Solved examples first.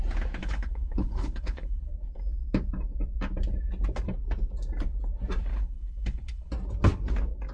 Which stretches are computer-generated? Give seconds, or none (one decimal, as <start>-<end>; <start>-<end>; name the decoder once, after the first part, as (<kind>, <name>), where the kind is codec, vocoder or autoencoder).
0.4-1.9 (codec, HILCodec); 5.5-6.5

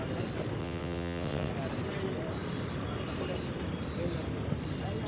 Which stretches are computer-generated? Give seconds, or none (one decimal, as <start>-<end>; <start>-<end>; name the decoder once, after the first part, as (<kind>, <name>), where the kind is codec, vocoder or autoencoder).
0.6-1.5 (vocoder, WaveNeXt)

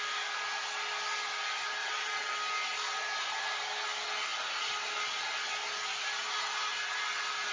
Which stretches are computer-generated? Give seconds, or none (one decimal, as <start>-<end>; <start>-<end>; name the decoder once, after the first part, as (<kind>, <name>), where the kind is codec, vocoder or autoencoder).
1.8-2.3 (vocoder, WaveNeXt)